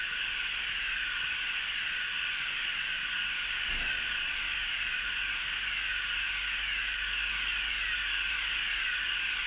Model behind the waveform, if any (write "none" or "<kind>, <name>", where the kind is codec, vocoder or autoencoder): none